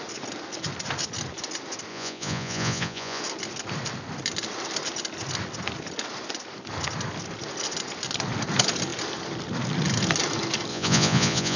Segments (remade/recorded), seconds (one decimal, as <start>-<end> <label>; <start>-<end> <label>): 0.0-1.9 recorded; 1.9-3.2 remade; 3.2-10.7 recorded; 10.7-11.6 remade